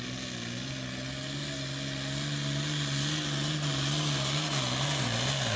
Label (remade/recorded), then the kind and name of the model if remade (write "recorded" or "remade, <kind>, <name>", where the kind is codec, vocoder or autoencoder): recorded